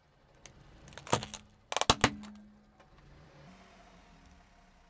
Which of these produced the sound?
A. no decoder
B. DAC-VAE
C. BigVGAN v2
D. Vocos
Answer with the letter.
A